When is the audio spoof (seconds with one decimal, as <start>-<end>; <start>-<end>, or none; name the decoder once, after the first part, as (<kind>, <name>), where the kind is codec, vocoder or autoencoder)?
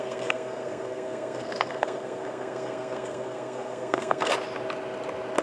0.0-4.3 (codec, SNAC)